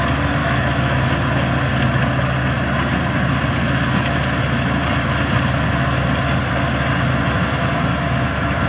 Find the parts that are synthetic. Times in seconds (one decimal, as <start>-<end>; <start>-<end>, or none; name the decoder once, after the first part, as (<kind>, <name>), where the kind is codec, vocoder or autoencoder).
0.4-1.0 (autoencoder, DAC-VAE)